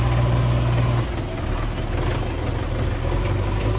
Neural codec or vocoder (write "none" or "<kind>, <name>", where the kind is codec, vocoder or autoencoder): none